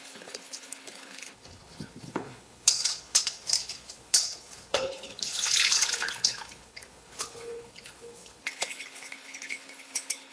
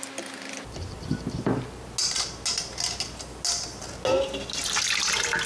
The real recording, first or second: second